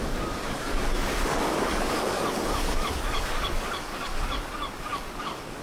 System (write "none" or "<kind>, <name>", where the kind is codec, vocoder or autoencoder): codec, DAC